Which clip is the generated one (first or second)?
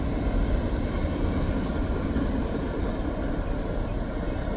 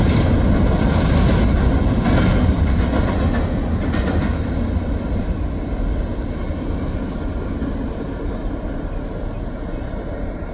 first